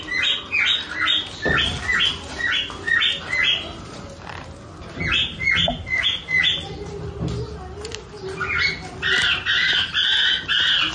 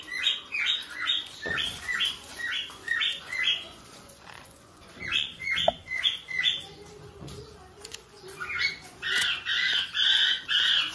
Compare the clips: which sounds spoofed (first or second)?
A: second